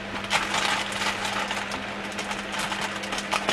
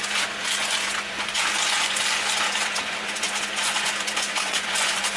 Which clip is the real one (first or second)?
first